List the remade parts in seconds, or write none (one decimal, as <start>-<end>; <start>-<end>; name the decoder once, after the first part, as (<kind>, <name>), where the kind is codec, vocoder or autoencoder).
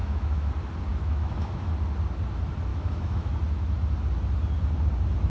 0.0-0.5 (autoencoder, DAC-VAE); 0.9-1.7; 2.7-3.3